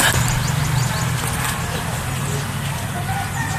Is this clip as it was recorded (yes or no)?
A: yes